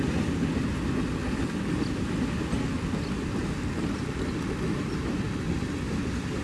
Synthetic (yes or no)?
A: no